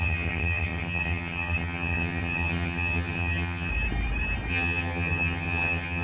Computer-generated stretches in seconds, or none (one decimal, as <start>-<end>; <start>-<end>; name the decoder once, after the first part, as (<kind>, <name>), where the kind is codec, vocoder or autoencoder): 0.0-3.7 (vocoder, HiFi-GAN); 4.5-6.0